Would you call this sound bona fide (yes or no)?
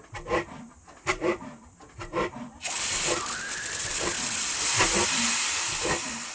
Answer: no